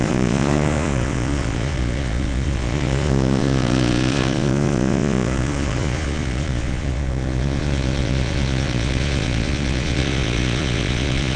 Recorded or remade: remade